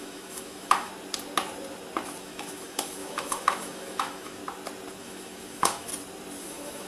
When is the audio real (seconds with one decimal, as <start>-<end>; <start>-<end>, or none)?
0.9-2.2; 4.4-5.0; 5.9-6.4